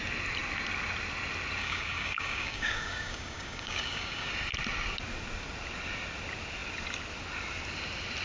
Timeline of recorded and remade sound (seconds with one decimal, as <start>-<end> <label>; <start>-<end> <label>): 0.0-1.6 recorded; 1.6-4.3 remade; 4.3-8.2 recorded